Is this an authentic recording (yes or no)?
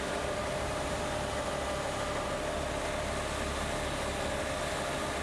yes